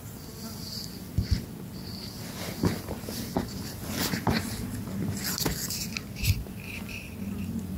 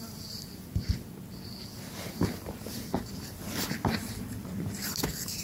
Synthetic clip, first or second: second